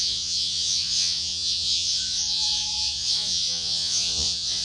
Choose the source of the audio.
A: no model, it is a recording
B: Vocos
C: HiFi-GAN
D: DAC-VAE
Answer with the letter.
B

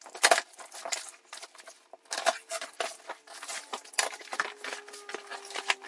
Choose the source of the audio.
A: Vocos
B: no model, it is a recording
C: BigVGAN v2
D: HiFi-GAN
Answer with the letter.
B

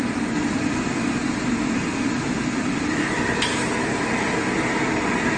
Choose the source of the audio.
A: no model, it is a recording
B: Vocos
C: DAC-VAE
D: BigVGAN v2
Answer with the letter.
A